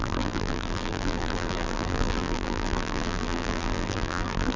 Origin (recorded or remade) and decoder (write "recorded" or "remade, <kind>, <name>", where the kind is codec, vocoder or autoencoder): remade, vocoder, BigVGAN v2